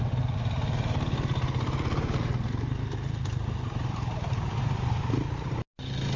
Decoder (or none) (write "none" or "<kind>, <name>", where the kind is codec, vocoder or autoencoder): none